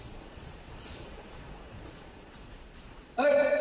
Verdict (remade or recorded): remade